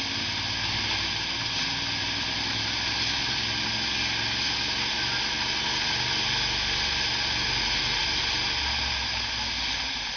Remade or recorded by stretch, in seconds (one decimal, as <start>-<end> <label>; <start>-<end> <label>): 0.0-10.2 recorded